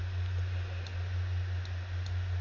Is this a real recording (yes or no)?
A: yes